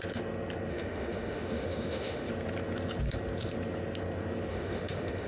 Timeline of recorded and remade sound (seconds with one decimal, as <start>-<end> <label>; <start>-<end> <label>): 0.0-0.7 recorded; 0.7-2.3 remade; 2.3-4.5 recorded; 4.5-5.3 remade